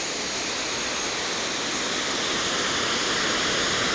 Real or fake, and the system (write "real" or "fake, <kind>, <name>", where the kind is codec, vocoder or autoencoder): real